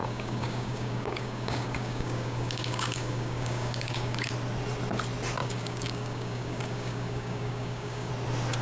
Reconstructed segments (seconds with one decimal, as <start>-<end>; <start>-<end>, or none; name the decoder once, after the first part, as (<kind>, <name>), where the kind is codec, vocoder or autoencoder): 0.0-4.3 (codec, DAC); 5.4-8.1